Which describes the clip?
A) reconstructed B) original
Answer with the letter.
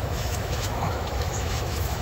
A